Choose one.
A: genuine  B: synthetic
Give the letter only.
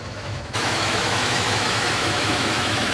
B